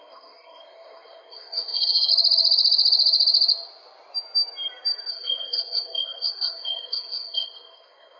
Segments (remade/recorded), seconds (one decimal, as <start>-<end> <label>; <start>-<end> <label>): 0.0-2.1 remade; 2.1-5.1 recorded; 5.1-8.2 remade